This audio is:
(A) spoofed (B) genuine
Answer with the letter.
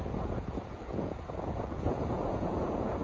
A